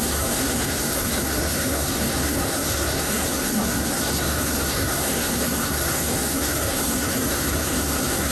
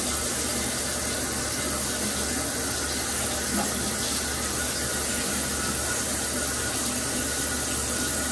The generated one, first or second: first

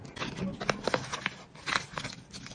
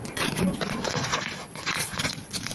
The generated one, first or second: second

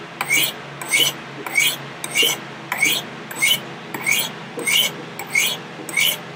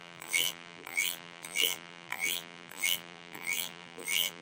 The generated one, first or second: second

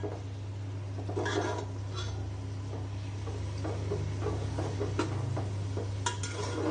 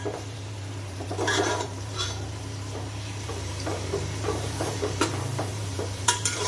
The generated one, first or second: second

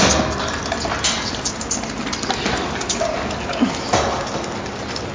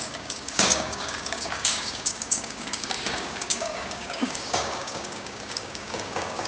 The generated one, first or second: second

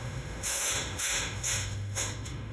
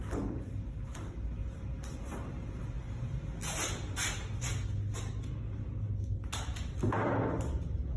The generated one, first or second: first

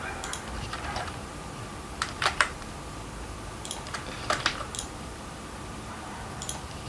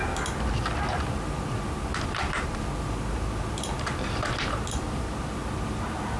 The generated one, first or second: first